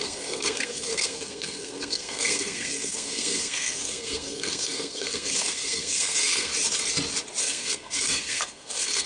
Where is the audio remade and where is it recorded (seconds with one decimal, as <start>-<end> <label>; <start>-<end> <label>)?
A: 0.0-6.5 remade; 6.5-7.4 recorded; 7.4-9.1 remade

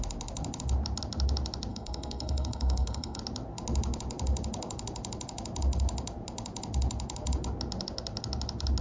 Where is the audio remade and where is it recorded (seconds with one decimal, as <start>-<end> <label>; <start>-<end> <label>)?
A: 0.0-1.7 recorded; 1.7-3.2 remade; 3.2-8.8 recorded

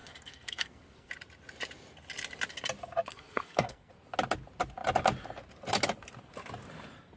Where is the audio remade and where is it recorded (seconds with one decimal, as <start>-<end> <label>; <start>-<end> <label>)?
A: 0.0-1.1 remade; 1.1-3.1 recorded; 3.1-3.9 remade; 3.9-7.2 recorded

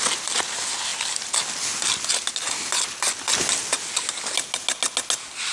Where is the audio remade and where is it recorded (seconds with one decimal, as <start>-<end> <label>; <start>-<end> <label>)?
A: 0.0-5.5 recorded

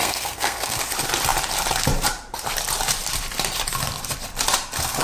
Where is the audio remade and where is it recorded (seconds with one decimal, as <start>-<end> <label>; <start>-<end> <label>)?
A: 0.0-0.8 remade; 0.8-5.0 recorded

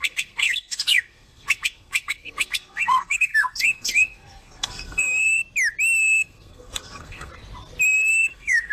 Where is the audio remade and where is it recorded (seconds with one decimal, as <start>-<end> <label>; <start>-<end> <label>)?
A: 0.0-5.4 remade; 5.4-6.0 recorded; 6.0-7.3 remade; 7.3-8.1 recorded; 8.1-8.7 remade